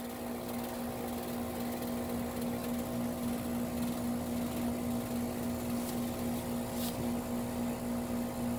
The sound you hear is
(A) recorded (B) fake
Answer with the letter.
A